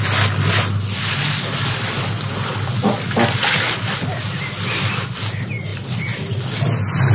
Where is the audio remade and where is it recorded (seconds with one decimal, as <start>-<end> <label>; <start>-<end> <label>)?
0.0-7.1 recorded